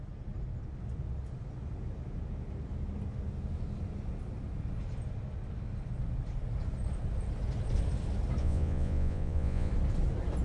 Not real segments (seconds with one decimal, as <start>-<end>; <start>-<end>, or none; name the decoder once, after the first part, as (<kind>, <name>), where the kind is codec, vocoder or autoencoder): 8.4-9.7 (vocoder, Vocos)